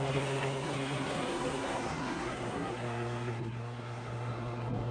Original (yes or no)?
no